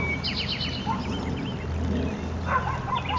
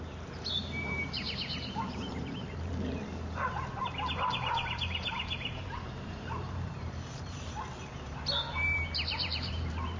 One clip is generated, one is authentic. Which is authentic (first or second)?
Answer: first